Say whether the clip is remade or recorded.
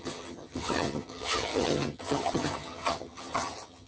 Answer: remade